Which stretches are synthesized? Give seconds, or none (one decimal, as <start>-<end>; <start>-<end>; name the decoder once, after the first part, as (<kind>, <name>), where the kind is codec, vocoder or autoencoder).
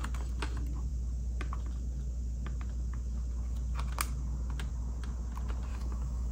5.7-6.3 (autoencoder, DAC-VAE)